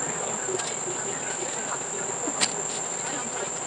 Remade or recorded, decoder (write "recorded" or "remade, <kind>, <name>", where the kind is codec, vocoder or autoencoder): recorded